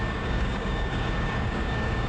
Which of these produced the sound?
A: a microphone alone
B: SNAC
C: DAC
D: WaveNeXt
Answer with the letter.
C